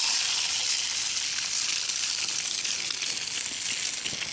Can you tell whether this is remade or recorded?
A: recorded